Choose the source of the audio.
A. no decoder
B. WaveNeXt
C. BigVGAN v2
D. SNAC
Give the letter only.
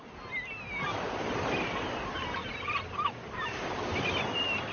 A